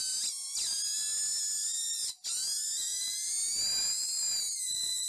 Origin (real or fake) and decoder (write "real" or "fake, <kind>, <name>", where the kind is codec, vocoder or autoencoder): real